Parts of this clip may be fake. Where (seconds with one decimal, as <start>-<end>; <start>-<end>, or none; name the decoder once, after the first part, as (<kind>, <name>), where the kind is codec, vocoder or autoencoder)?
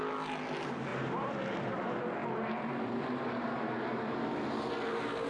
0.9-1.7 (vocoder, BigVGAN v2); 2.2-4.7